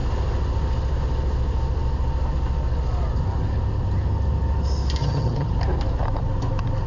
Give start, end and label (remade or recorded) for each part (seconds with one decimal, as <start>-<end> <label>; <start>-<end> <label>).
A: 0.0-5.0 recorded; 5.0-5.5 remade; 5.5-6.9 recorded